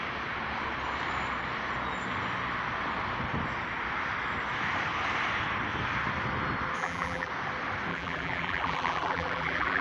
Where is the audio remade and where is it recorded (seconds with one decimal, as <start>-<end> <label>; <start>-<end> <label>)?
0.0-6.8 recorded; 6.8-7.3 remade; 7.3-7.9 recorded; 7.9-9.8 remade